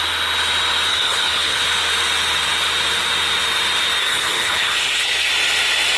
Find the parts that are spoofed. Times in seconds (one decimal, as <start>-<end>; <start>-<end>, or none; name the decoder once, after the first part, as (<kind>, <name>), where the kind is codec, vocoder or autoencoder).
0.9-1.6 (codec, HILCodec); 4.0-5.3